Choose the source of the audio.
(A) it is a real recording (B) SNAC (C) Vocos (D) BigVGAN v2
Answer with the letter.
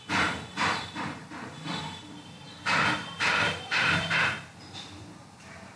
D